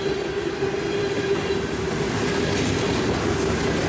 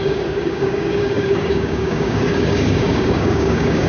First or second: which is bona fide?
first